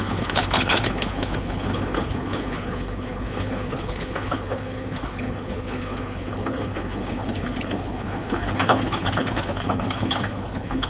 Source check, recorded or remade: remade